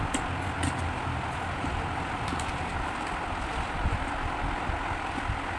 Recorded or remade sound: recorded